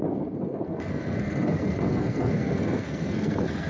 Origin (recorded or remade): remade